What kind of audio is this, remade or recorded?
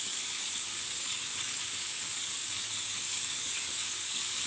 remade